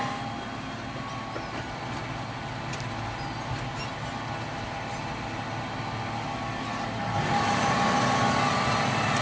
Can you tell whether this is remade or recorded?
recorded